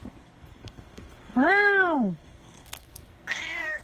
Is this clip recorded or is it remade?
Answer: remade